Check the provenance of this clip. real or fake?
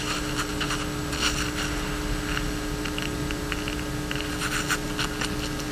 real